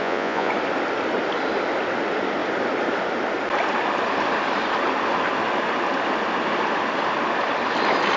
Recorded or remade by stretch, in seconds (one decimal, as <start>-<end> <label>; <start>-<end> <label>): 0.0-0.5 remade; 0.5-8.2 recorded